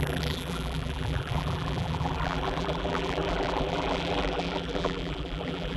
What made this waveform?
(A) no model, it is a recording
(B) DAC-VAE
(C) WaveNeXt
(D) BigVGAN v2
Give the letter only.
D